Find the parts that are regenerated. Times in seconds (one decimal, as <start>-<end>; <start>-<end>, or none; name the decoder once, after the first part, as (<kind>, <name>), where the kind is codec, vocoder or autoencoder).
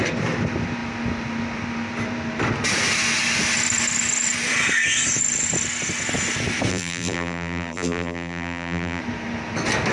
6.7-9.0 (vocoder, BigVGAN v2)